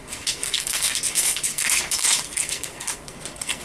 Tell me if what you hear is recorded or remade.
remade